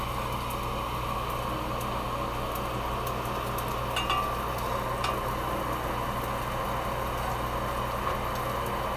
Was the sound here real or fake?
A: real